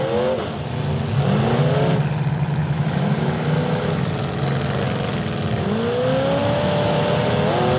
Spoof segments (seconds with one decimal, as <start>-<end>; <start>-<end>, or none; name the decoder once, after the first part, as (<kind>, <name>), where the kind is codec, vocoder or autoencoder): 2.6-4.1 (autoencoder, DAC-VAE); 6.4-7.0